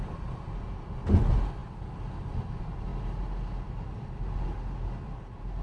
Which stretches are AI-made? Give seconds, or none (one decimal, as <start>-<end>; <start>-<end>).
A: none